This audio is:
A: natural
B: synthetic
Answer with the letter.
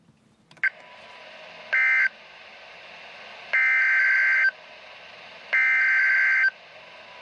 A